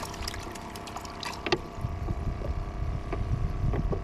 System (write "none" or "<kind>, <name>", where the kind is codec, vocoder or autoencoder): none